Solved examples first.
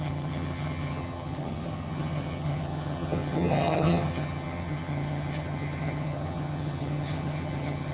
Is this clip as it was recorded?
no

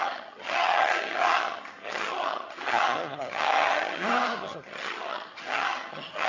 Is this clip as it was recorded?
no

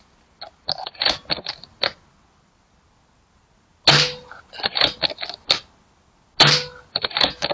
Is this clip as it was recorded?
yes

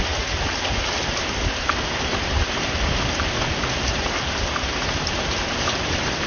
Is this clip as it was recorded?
yes